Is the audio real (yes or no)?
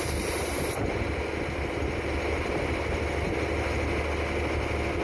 yes